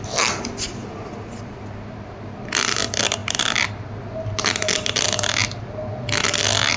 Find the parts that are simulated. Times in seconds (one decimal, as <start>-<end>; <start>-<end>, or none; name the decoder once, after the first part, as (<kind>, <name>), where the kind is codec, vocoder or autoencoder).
none

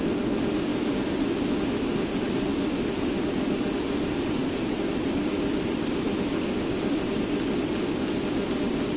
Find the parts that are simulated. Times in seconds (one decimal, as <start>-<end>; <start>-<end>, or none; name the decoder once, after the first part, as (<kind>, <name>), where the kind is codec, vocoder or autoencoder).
none

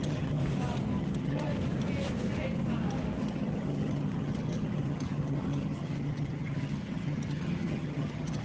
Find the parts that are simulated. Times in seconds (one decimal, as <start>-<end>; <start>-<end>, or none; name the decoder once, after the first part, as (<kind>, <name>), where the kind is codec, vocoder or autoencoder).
0.0-0.4 (vocoder, HiFi-GAN); 1.0-1.5; 3.2-8.4

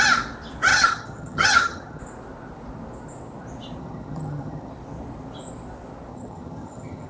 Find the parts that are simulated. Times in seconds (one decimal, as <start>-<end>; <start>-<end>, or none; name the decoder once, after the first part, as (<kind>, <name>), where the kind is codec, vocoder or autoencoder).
0.7-2.0 (vocoder, HiFi-GAN); 3.8-4.7; 6.1-7.1

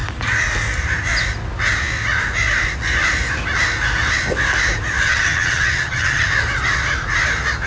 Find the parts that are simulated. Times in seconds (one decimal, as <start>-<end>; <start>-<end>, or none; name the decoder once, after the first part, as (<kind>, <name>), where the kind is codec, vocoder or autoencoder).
5.1-6.3 (vocoder, HiFi-GAN)

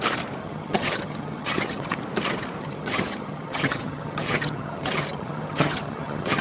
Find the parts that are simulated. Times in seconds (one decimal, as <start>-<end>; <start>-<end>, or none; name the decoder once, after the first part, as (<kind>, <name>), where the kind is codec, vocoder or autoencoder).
0.4-2.0 (vocoder, HiFi-GAN); 2.6-6.4